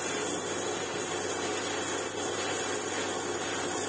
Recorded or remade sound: recorded